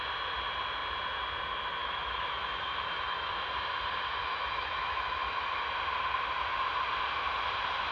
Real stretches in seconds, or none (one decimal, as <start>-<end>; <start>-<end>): 0.0-1.8; 3.3-4.2; 5.6-7.9